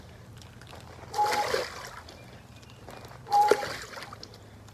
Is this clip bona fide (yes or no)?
yes